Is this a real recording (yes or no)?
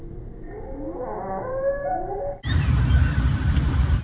yes